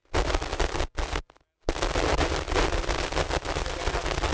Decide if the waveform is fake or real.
real